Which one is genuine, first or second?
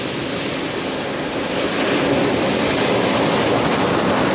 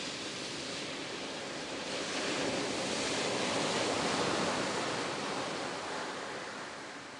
first